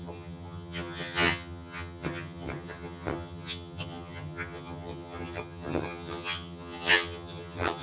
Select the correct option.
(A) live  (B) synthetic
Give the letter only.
B